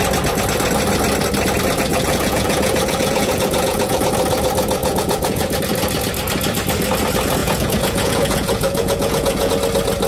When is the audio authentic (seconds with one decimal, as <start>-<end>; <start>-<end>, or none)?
0.0-1.9; 4.0-4.8; 5.6-7.4; 9.5-10.1